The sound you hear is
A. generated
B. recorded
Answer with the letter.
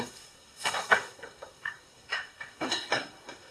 A